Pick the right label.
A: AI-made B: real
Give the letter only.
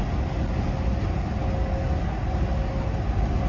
B